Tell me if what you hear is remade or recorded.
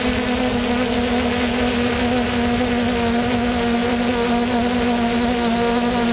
recorded